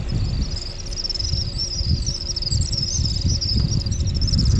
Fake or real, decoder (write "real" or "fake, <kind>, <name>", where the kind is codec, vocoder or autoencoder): real